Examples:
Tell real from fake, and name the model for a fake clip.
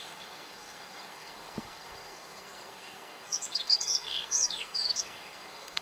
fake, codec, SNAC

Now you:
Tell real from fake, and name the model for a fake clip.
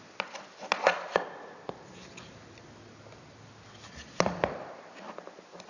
real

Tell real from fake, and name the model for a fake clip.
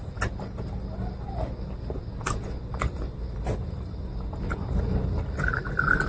real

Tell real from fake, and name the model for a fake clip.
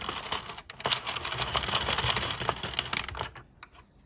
real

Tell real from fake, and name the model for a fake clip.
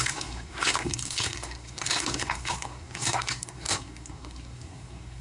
fake, codec, SNAC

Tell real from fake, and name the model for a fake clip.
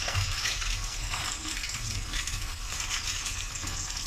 fake, codec, SNAC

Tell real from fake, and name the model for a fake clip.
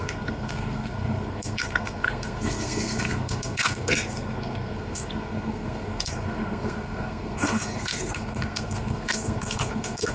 fake, codec, SNAC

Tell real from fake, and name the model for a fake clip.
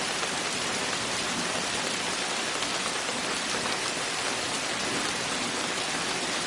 real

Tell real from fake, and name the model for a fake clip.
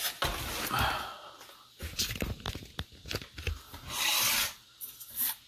real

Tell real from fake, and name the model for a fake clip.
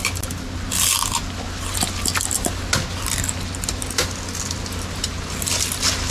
real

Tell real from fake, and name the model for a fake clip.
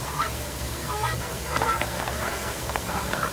fake, codec, SNAC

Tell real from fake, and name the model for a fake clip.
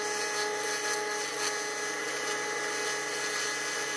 real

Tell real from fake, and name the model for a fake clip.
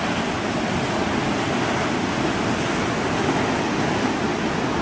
real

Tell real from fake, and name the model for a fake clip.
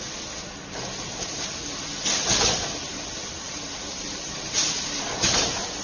real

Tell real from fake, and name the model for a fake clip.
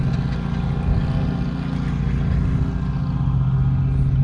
real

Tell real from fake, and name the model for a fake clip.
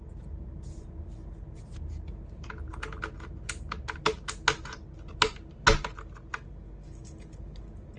real